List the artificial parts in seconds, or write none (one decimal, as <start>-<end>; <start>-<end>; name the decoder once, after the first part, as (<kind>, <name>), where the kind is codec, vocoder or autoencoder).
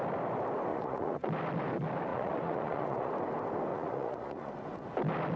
0.7-1.3 (vocoder, Vocos); 2.1-3.1; 3.7-4.5